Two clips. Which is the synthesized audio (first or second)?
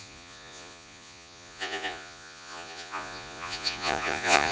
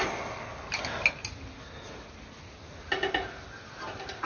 first